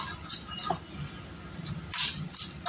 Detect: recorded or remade recorded